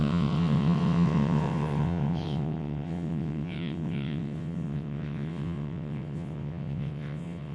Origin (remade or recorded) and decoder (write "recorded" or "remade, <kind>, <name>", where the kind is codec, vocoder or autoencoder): remade, vocoder, WaveNeXt